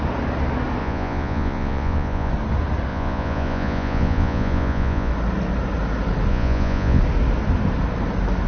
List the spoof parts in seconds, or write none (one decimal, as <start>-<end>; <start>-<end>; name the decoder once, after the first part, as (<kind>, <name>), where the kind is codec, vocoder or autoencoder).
0.8-2.3 (vocoder, Vocos); 2.9-5.1; 6.3-7.0